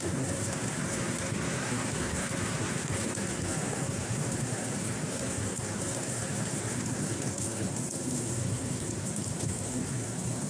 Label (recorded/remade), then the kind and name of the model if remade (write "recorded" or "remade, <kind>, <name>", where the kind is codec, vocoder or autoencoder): remade, codec, SNAC